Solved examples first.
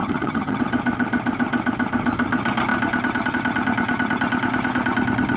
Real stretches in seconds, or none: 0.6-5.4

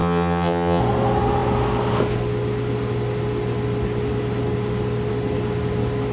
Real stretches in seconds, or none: 0.8-6.1

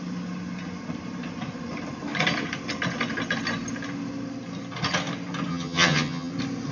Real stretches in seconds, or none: 0.0-5.5; 6.3-6.7

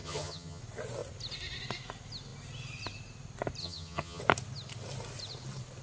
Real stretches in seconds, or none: 0.6-3.6; 4.2-5.8

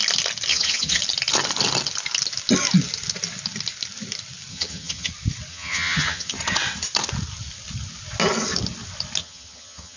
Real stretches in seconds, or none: 0.0-0.5; 1.0-4.5; 5.1-5.5; 6.3-9.2